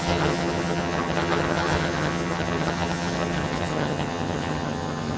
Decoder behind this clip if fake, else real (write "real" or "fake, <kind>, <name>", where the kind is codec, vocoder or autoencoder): fake, vocoder, HiFi-GAN